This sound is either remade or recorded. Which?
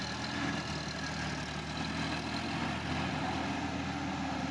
recorded